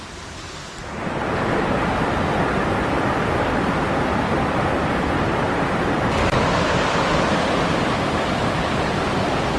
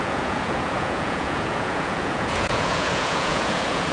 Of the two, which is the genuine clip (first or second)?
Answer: first